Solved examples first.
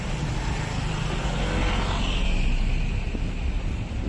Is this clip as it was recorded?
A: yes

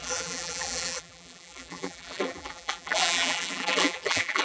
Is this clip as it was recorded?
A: no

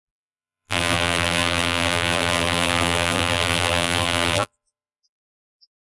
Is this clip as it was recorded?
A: no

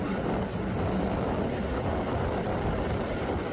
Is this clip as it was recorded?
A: yes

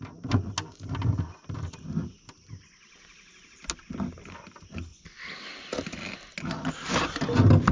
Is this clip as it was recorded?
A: yes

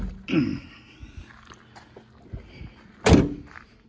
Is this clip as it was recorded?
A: yes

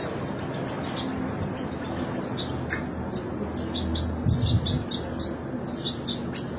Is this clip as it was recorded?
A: yes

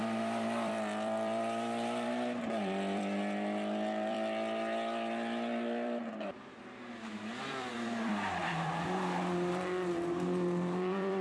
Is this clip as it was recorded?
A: no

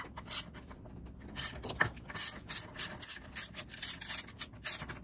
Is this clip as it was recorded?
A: yes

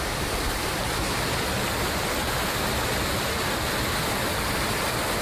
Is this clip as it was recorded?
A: yes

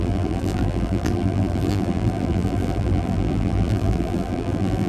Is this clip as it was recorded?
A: no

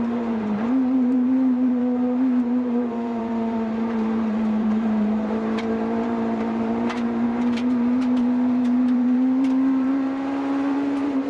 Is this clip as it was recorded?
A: no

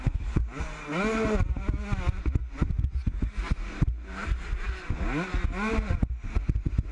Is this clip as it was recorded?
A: yes